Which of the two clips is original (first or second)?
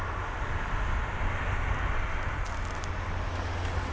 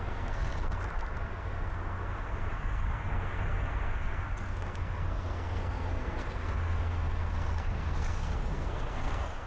first